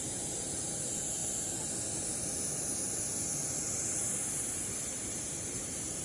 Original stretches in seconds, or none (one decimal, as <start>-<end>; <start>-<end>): 1.2-4.8